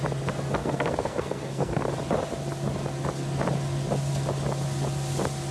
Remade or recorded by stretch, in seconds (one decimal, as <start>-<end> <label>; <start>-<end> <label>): 0.0-0.6 recorded; 0.6-1.9 remade; 1.9-5.5 recorded